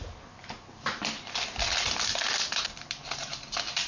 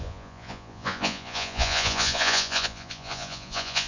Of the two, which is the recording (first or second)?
first